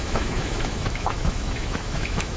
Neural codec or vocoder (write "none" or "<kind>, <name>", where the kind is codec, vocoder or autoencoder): autoencoder, DAC-VAE